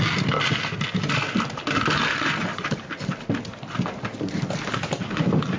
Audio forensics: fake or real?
real